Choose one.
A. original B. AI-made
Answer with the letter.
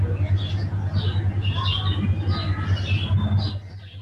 A